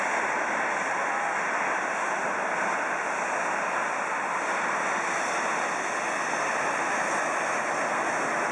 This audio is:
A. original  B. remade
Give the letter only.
A